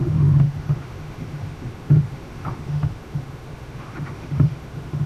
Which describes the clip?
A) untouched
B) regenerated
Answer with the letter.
B